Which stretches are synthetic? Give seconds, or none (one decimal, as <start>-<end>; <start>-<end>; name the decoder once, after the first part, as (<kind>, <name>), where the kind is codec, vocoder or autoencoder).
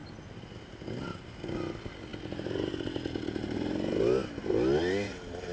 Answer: none